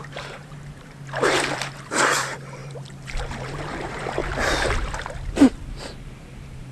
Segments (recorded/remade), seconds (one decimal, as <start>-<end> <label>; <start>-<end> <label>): 0.0-4.2 remade; 4.2-5.4 recorded; 5.4-6.7 remade

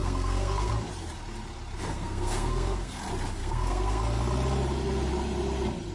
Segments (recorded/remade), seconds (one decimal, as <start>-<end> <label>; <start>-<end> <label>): 0.0-0.7 remade; 0.7-1.9 recorded; 1.9-3.0 remade; 3.0-3.4 recorded; 3.4-4.0 remade; 4.0-5.9 recorded

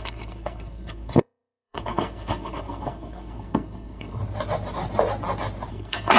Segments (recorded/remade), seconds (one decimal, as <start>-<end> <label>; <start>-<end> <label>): 0.0-4.2 remade; 4.2-5.7 recorded; 5.7-6.2 remade

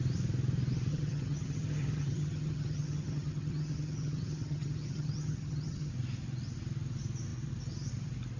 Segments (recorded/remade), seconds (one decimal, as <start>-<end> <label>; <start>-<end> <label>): 0.0-0.9 recorded; 0.9-5.9 remade; 5.9-8.4 recorded

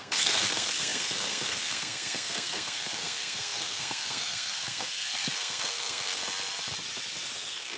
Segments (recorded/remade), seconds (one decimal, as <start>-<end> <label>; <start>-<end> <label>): 0.0-6.2 remade; 6.2-7.3 recorded; 7.3-7.8 remade